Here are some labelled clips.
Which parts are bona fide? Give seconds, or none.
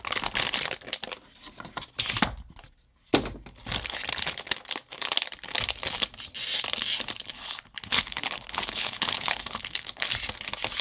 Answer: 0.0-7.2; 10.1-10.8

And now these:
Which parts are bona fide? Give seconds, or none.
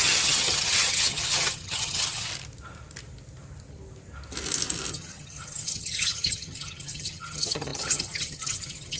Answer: 2.3-4.9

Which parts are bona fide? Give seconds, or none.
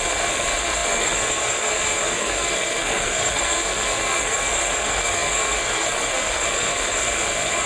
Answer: none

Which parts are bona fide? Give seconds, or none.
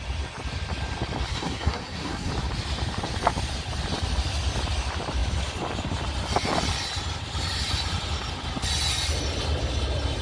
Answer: 0.0-1.3; 2.3-10.2